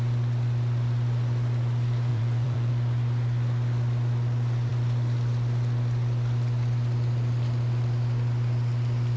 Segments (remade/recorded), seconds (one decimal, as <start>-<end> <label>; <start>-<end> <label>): 0.0-2.1 recorded; 2.1-2.7 remade; 2.7-9.2 recorded